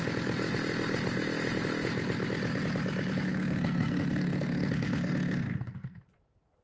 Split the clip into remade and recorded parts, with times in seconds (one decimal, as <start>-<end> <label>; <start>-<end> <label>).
0.0-3.3 recorded; 3.3-6.0 remade; 6.0-6.6 recorded